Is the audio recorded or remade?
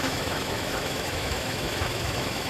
remade